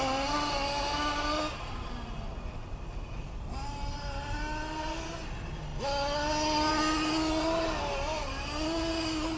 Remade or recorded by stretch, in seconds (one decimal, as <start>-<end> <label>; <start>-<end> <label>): 0.0-9.4 recorded